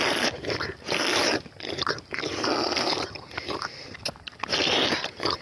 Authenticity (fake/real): real